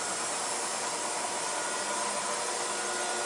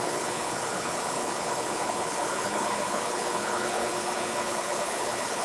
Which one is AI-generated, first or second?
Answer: second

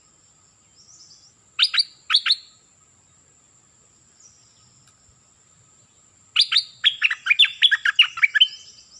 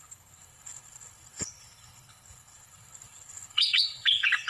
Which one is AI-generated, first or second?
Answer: second